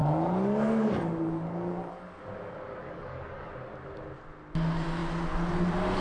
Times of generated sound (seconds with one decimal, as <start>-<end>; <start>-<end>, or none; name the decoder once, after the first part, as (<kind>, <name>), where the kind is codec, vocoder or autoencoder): 0.0-2.2 (codec, DAC); 2.8-3.5